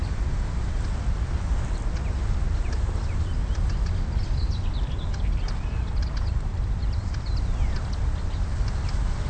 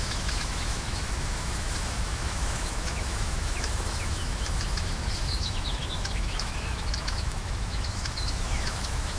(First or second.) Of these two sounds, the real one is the first